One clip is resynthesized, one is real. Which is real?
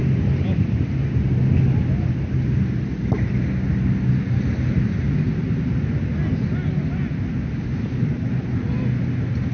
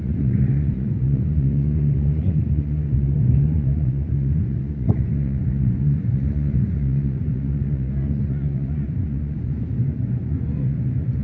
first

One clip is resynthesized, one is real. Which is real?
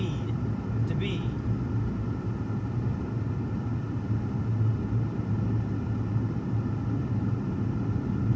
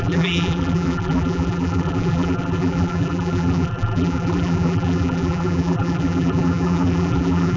first